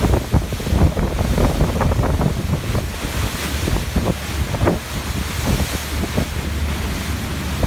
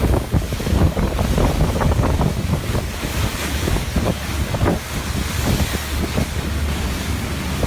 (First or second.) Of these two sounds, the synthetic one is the second